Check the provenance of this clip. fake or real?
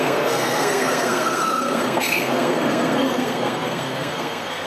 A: fake